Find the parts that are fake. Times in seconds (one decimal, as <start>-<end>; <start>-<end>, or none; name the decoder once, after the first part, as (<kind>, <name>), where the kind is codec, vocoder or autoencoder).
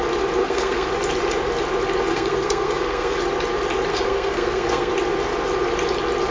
0.4-0.9 (codec, SNAC); 2.1-3.2; 3.9-4.9